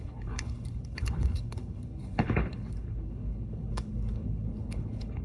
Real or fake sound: fake